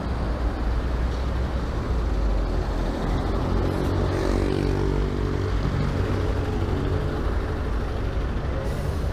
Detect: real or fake real